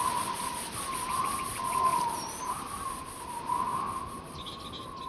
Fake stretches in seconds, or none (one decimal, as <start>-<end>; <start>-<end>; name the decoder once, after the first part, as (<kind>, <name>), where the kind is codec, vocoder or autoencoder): 1.9-2.9 (vocoder, BigVGAN v2); 3.7-4.5